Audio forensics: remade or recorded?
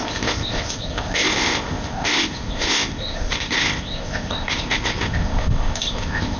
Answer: remade